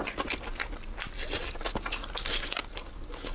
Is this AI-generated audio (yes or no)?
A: no